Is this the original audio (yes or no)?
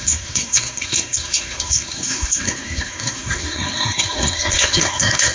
no